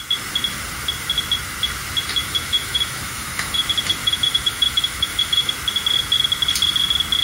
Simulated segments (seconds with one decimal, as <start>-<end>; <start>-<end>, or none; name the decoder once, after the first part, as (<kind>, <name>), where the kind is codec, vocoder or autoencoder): 2.2-3.6 (autoencoder, DAC-VAE); 4.0-5.5